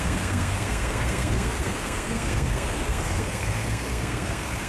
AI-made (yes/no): yes